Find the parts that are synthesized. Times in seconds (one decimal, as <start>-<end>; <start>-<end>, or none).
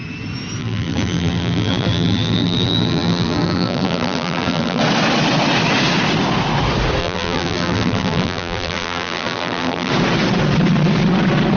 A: 0.6-4.8; 7.0-9.9